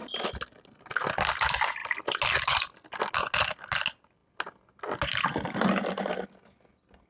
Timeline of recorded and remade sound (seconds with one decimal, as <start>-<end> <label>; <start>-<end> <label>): 0.0-7.1 recorded